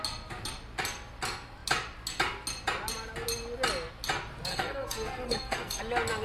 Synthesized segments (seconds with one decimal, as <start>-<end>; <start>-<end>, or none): 4.5-5.8